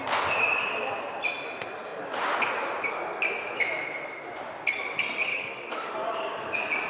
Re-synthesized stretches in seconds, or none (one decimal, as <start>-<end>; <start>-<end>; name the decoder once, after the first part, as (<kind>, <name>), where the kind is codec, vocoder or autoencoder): 5.3-6.3 (codec, DAC)